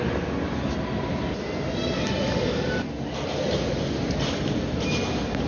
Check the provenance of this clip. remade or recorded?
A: recorded